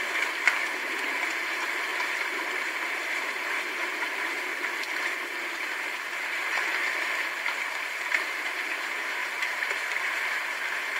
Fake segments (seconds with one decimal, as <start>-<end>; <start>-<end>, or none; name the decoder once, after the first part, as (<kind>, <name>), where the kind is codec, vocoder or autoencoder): 0.0-4.5 (vocoder, BigVGAN v2); 7.7-9.2; 10.0-11.0